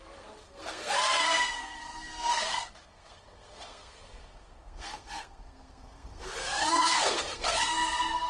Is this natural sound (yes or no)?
no